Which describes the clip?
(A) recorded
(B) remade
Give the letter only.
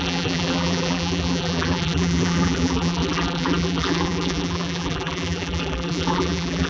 B